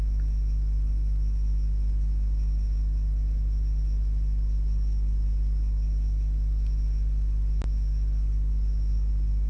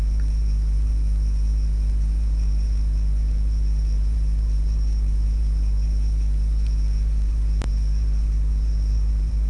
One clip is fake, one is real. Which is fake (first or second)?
second